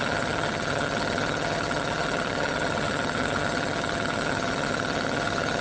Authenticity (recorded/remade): remade